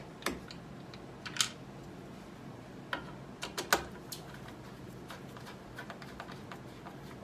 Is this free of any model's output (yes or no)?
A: yes